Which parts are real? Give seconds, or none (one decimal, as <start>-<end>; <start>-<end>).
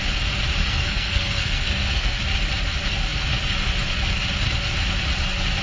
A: 0.0-0.6; 2.2-5.6